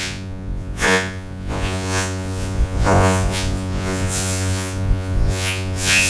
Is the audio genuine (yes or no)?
no